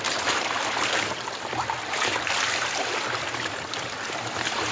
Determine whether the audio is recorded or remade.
recorded